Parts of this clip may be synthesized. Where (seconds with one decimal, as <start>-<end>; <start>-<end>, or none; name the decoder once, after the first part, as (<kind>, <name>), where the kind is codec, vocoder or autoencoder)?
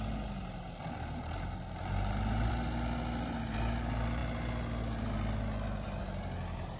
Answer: 0.4-2.5 (vocoder, BigVGAN v2)